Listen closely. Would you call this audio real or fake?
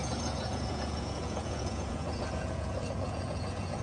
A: fake